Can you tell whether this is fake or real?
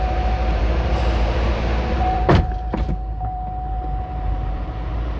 fake